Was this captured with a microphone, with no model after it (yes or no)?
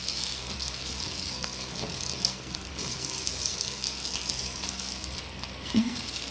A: no